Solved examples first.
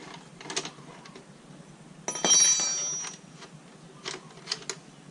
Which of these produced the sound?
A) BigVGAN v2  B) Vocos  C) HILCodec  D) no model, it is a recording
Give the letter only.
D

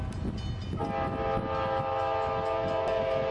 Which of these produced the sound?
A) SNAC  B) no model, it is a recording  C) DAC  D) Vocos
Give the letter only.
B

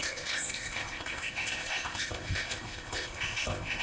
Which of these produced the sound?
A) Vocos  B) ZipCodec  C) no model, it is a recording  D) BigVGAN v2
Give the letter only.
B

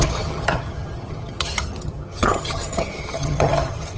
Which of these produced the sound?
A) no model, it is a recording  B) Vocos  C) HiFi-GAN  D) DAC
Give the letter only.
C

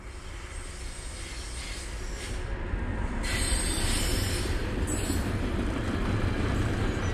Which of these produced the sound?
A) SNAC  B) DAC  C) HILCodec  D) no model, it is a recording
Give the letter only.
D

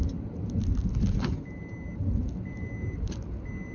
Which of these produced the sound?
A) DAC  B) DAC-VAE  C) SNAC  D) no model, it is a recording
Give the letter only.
D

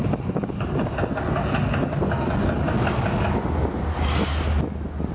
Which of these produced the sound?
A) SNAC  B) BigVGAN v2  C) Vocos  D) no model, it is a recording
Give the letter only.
D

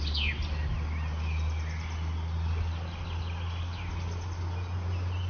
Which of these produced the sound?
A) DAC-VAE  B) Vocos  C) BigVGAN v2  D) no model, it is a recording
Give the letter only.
D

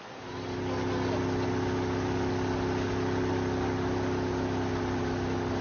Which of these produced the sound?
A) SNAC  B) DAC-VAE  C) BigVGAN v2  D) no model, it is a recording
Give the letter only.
D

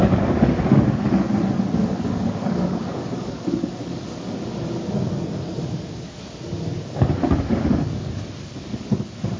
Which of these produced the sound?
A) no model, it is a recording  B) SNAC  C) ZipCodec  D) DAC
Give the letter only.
D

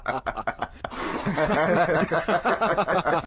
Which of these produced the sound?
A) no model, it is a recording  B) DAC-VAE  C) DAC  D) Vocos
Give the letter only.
A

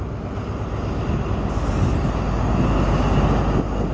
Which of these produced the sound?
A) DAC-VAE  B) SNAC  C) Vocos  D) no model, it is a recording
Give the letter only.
D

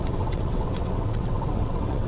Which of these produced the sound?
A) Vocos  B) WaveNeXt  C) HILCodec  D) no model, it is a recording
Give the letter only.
B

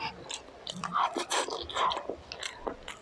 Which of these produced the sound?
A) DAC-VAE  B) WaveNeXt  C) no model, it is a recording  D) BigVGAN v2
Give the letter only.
C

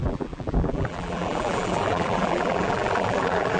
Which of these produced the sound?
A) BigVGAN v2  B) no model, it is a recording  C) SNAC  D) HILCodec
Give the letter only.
A